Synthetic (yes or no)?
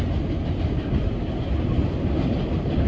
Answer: no